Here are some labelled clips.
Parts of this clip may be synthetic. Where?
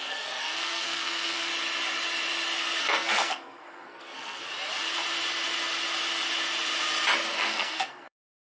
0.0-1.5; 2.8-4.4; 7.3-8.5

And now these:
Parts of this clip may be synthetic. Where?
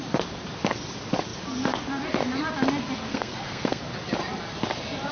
3.1-3.8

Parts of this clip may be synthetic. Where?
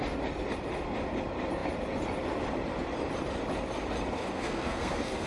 4.2-5.3